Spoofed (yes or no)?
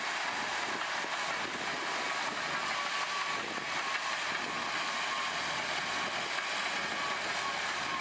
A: no